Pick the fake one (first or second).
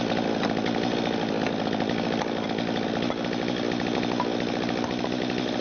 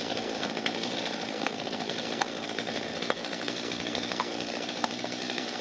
second